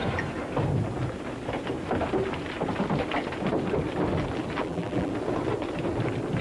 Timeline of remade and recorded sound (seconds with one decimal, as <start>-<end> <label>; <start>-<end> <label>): 0.0-4.6 recorded; 4.6-5.1 remade; 5.1-6.4 recorded